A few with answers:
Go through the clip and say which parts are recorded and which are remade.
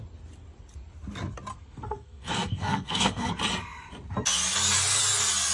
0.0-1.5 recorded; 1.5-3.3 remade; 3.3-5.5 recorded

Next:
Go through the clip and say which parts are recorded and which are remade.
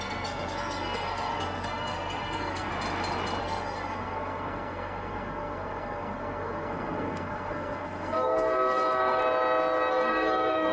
0.0-2.7 remade; 2.7-3.4 recorded; 3.4-9.2 remade; 9.2-9.9 recorded; 9.9-10.7 remade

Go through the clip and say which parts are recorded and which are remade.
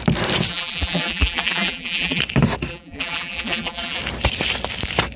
0.0-0.5 recorded; 0.5-2.2 remade; 2.2-2.7 recorded; 2.7-4.0 remade; 4.0-5.2 recorded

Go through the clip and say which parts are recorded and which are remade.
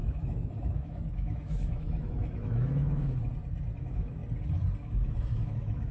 0.0-3.2 remade; 3.2-3.8 recorded; 3.8-4.2 remade; 4.2-4.8 recorded; 4.8-5.9 remade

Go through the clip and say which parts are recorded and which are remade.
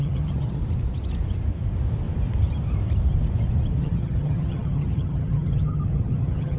0.0-0.6 remade; 0.6-3.8 recorded; 3.8-6.6 remade